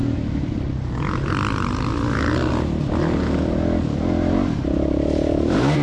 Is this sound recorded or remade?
recorded